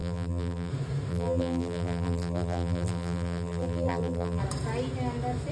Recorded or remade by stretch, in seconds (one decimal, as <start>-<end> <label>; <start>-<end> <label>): 0.0-0.7 remade; 0.7-1.1 recorded; 1.1-4.4 remade; 4.4-5.5 recorded